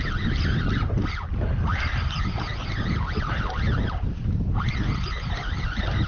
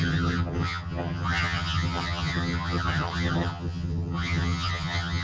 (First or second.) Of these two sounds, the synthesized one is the second